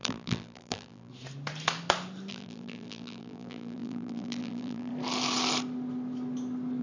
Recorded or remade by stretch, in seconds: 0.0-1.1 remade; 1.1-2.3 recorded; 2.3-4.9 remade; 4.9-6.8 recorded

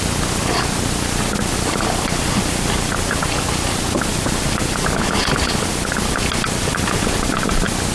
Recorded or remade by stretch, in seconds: 0.0-7.9 recorded

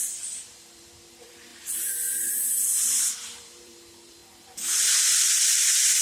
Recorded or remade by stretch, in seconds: 0.0-4.2 remade; 4.2-5.0 recorded; 5.0-6.0 remade